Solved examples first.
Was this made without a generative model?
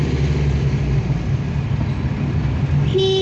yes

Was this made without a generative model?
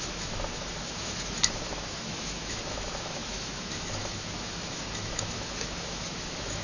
no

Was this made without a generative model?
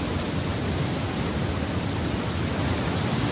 yes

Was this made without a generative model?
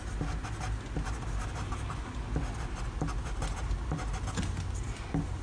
yes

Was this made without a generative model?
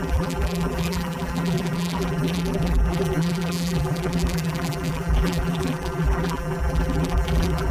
no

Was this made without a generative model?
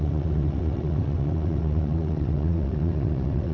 no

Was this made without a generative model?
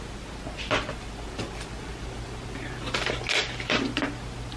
yes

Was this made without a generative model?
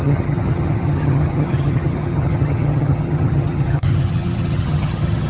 no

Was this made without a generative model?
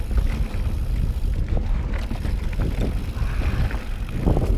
yes